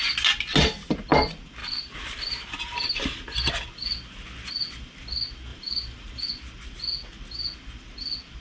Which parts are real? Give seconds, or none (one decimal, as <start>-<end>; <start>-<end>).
0.0-1.6; 3.5-5.5; 6.2-8.4